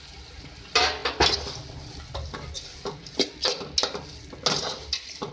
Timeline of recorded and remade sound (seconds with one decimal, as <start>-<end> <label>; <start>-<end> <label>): 0.0-5.3 recorded